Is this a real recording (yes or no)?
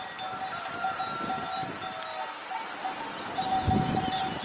yes